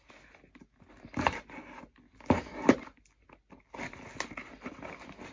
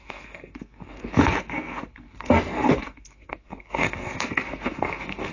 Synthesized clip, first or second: second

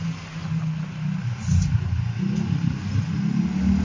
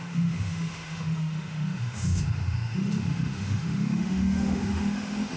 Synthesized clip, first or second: second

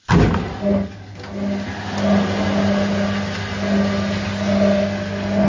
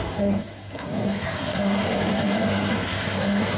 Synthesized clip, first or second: second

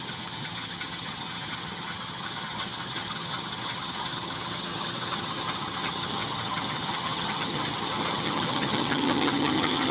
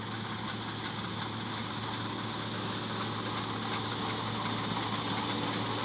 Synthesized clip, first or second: first